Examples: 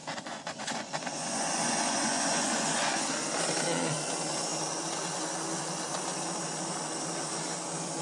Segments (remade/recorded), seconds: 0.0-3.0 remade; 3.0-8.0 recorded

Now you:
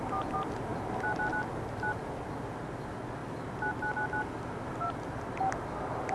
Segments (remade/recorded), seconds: 0.0-6.1 recorded

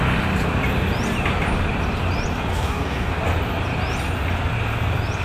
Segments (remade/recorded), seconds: 0.0-2.5 recorded; 2.5-3.1 remade; 3.1-5.2 recorded

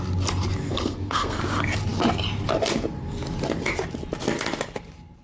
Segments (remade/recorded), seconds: 0.0-0.7 recorded; 0.7-1.4 remade; 1.4-5.2 recorded

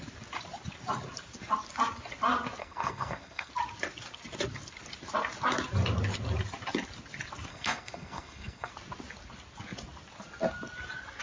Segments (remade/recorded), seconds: 0.0-2.6 recorded; 2.6-3.5 remade; 3.5-7.5 recorded; 7.5-8.7 remade; 8.7-11.2 recorded

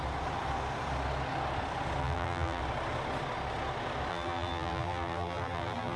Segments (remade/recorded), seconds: 0.0-2.0 recorded; 2.0-2.6 remade; 2.6-4.1 recorded; 4.1-6.0 remade

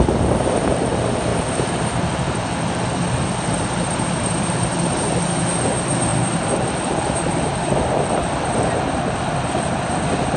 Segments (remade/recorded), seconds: 0.0-1.3 recorded; 1.3-5.2 remade; 5.2-6.1 recorded; 6.1-8.7 remade; 8.7-10.4 recorded